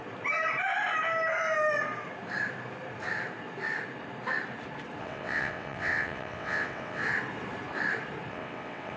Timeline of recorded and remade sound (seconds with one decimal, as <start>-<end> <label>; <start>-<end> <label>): 0.0-5.0 recorded; 5.0-7.0 remade; 7.0-8.3 recorded; 8.3-9.0 remade

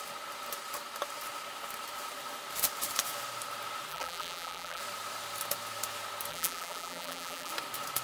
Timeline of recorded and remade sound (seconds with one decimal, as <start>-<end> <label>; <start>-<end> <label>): 0.0-3.9 recorded; 3.9-4.8 remade; 4.8-6.3 recorded; 6.3-7.5 remade; 7.5-8.0 recorded

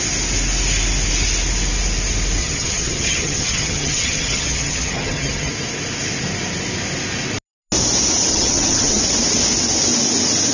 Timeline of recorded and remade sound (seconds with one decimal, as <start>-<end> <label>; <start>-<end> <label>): 0.0-2.4 recorded; 2.4-5.5 remade; 5.5-8.3 recorded; 8.3-9.0 remade; 9.0-10.5 recorded

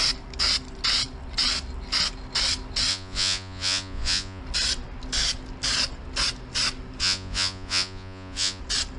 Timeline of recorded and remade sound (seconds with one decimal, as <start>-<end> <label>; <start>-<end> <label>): 0.0-2.9 recorded; 2.9-4.4 remade; 4.4-7.0 recorded; 7.0-8.6 remade; 8.6-9.0 recorded

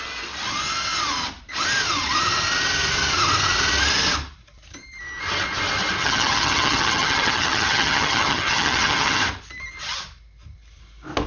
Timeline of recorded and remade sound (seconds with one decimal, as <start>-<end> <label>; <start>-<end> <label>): 0.0-6.0 recorded; 6.0-9.2 remade; 9.2-11.3 recorded